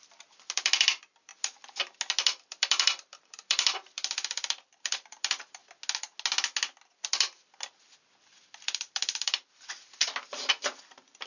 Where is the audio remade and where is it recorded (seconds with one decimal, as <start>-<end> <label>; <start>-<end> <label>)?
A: 0.0-1.3 remade; 1.3-2.4 recorded; 2.4-5.6 remade; 5.6-6.9 recorded; 6.9-11.3 remade